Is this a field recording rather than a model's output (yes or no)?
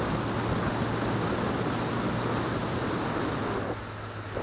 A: yes